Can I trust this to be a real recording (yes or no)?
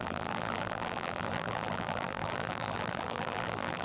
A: no